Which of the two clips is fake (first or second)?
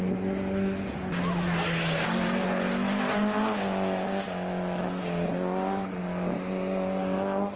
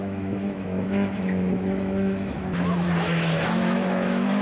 second